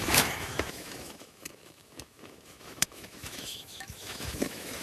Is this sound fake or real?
fake